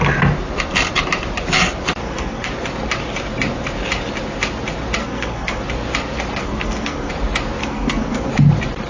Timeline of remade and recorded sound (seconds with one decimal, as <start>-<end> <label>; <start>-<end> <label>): 0.0-2.0 recorded; 2.0-2.5 remade; 2.5-5.0 recorded; 5.0-5.6 remade; 5.6-6.4 recorded; 6.4-7.1 remade; 7.1-7.6 recorded; 7.6-8.3 remade; 8.3-8.9 recorded